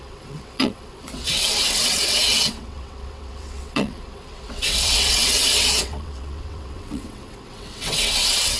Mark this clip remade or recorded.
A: remade